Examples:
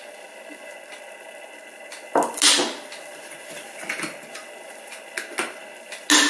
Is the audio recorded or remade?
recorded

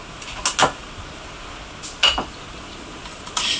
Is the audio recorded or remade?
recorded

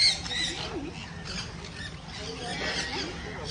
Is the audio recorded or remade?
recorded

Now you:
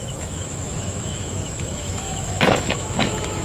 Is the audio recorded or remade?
remade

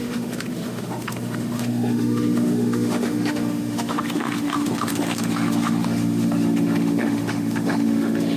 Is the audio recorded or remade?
remade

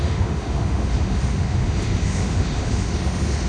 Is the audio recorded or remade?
remade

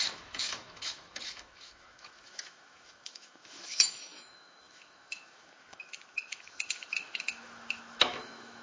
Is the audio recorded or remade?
remade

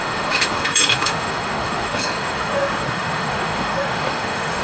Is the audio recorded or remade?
remade